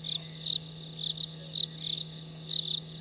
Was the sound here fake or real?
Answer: real